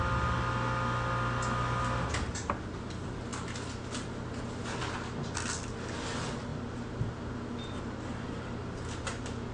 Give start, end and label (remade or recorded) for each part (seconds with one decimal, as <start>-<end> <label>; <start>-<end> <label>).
0.0-9.5 recorded